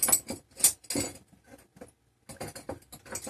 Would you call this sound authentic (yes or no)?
yes